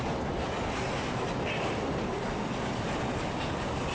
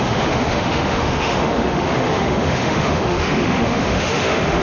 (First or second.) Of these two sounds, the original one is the first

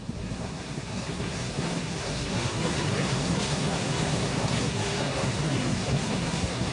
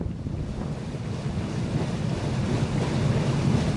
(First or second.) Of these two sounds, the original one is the second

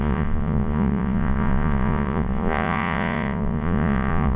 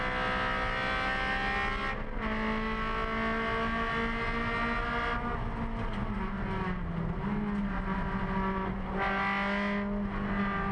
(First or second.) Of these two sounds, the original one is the second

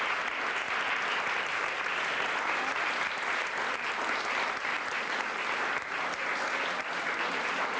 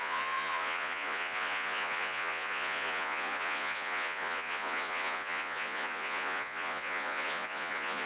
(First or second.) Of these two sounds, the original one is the first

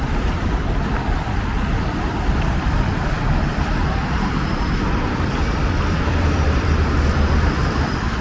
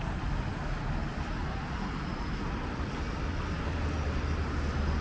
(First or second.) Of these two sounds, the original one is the second